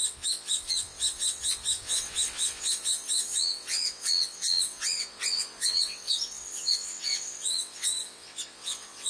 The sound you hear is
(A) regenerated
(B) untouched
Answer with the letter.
A